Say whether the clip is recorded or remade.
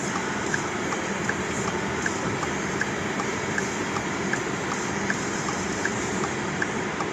recorded